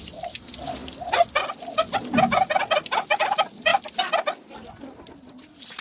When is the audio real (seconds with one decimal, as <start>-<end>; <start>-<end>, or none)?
0.0-5.8